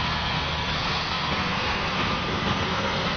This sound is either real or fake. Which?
fake